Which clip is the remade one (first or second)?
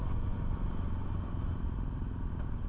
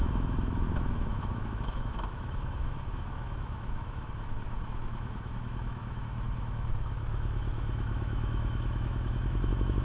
second